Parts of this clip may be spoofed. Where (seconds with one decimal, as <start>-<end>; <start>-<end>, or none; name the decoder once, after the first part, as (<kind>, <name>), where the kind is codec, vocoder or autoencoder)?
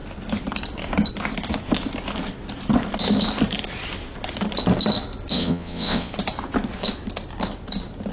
5.3-6.1 (vocoder, WaveNeXt)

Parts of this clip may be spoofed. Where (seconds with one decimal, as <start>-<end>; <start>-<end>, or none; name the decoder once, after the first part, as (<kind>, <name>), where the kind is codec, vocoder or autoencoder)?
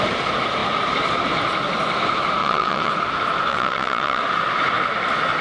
2.4-2.9 (vocoder, WaveNeXt); 3.5-4.2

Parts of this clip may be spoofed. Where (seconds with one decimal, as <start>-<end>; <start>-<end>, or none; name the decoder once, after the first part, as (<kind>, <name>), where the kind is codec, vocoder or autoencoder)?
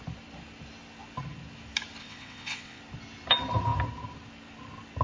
2.0-2.8 (vocoder, WaveNeXt)